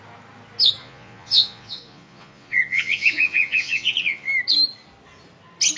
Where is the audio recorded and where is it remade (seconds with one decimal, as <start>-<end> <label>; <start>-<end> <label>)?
0.0-0.8 recorded; 0.8-4.3 remade; 4.3-5.8 recorded